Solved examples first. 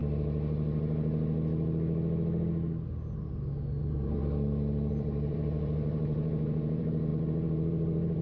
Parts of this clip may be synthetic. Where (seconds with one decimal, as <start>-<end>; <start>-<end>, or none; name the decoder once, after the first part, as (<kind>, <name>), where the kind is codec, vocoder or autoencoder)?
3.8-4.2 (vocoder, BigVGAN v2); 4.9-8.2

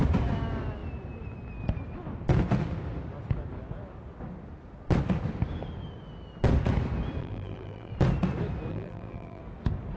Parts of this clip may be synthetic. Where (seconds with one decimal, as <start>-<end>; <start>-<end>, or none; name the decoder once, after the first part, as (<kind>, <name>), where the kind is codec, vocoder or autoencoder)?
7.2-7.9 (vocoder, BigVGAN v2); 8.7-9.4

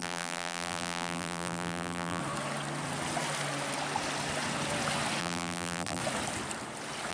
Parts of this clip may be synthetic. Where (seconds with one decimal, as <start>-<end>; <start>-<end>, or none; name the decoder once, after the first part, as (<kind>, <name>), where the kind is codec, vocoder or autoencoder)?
0.0-2.2 (vocoder, BigVGAN v2); 5.2-6.0

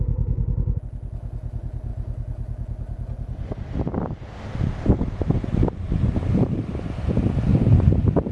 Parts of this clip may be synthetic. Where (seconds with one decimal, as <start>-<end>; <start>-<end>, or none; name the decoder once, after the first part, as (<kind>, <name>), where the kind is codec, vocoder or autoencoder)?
1.9-6.5 (vocoder, BigVGAN v2); 7.5-8.3